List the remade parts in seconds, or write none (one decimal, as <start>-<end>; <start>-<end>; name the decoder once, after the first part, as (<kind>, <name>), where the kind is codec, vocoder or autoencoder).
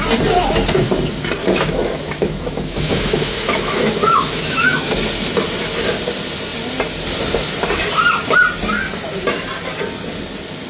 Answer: 1.4-4.9 (autoencoder, DAC-VAE)